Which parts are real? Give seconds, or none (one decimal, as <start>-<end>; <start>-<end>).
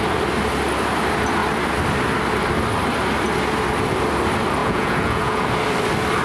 0.0-4.6; 5.5-6.2